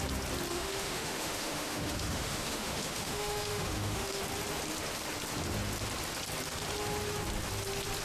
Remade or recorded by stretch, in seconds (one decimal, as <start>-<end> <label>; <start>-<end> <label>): 0.0-0.5 recorded; 0.5-4.2 remade; 4.2-8.0 recorded